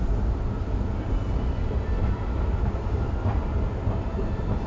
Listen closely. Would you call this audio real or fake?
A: real